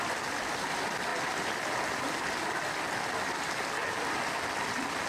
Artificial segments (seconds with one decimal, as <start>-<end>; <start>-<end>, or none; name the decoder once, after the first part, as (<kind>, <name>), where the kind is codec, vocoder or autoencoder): none